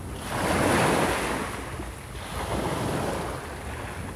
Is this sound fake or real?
real